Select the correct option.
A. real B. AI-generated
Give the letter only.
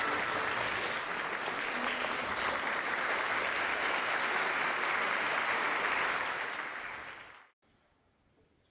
A